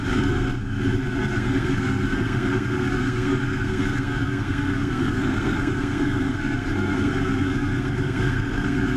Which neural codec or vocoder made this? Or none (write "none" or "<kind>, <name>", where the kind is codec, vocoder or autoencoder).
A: codec, SNAC